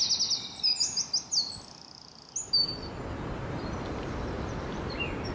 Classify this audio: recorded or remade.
recorded